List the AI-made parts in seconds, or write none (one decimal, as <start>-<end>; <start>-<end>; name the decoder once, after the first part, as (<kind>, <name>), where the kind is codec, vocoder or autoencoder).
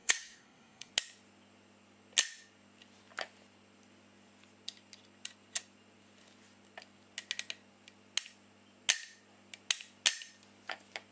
0.0-0.9 (codec, SNAC)